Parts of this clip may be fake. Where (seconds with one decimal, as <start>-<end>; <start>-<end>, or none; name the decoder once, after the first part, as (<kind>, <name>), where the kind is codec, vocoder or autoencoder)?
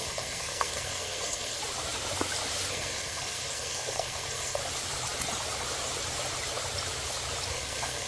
0.0-1.6 (codec, SNAC); 2.7-4.6; 7.5-8.1